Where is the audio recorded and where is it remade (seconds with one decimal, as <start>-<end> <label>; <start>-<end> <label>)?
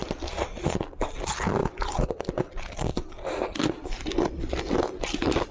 0.0-5.5 recorded